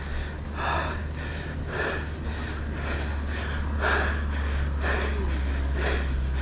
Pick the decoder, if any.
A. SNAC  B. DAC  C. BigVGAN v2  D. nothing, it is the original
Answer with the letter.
D